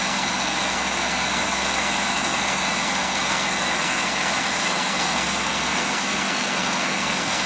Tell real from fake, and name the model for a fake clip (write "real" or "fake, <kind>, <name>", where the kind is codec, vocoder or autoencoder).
fake, codec, SNAC